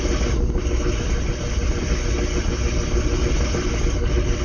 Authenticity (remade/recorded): recorded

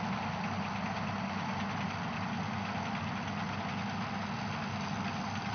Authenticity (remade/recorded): recorded